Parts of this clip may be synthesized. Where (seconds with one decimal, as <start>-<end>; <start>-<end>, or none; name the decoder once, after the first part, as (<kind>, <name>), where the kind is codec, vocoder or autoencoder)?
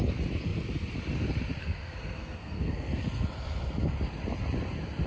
1.6-3.0 (codec, SNAC)